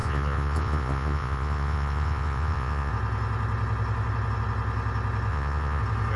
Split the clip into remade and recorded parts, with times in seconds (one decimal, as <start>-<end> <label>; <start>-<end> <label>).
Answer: 0.0-2.9 remade; 2.9-5.3 recorded; 5.3-5.8 remade; 5.8-6.2 recorded